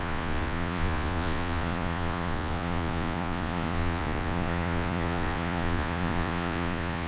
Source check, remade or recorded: remade